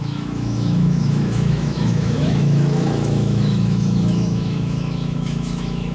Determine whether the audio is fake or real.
fake